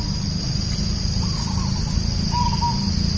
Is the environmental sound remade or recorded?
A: recorded